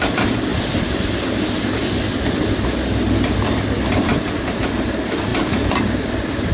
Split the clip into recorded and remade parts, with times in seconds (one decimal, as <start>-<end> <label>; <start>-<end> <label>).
0.0-5.3 recorded; 5.3-6.5 remade